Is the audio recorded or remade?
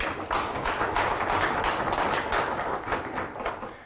recorded